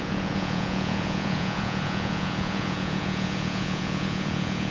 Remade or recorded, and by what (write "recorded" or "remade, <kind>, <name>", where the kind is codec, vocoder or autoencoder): remade, vocoder, Vocos